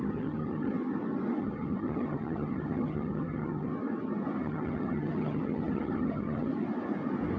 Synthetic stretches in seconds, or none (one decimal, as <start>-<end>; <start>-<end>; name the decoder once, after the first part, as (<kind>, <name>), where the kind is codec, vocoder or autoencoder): 0.0-0.7 (vocoder, HiFi-GAN); 1.4-3.7; 4.4-6.5